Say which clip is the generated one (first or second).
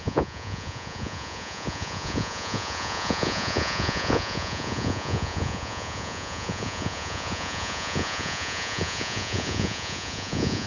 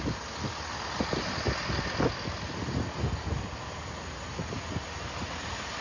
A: first